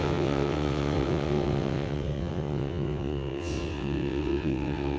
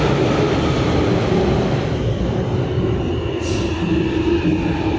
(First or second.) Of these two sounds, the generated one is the first